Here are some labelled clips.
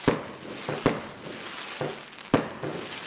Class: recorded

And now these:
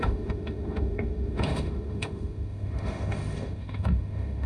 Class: remade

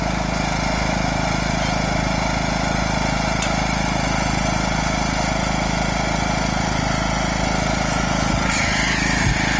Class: recorded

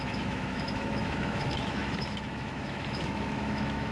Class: remade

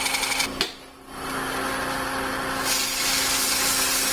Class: recorded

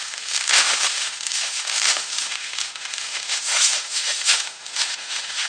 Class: remade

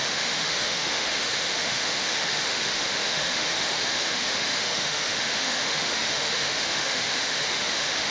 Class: remade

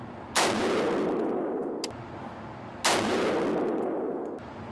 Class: recorded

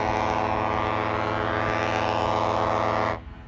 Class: recorded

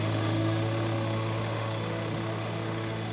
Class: remade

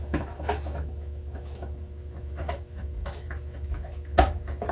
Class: remade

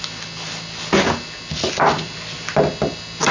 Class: recorded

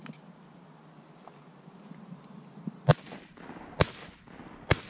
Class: recorded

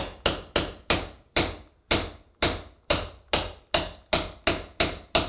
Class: recorded